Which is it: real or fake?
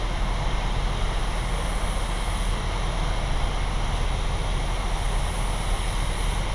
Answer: real